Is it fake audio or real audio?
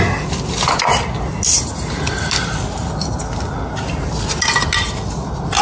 real